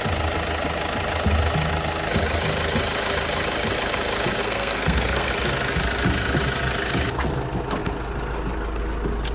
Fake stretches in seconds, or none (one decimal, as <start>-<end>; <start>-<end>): 4.4-5.3